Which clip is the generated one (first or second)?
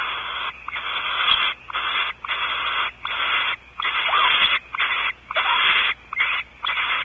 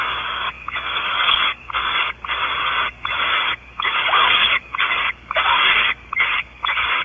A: second